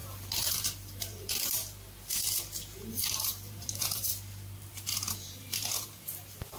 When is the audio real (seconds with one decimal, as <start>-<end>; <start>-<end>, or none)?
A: 1.6-2.9; 4.1-5.1